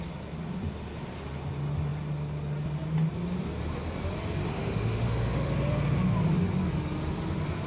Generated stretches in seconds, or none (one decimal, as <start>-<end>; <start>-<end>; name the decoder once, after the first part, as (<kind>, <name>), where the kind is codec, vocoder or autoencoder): 4.5-5.5 (autoencoder, DAC-VAE)